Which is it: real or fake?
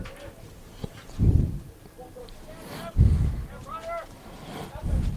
real